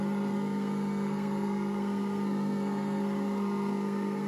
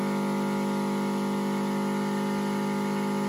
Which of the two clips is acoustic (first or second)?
second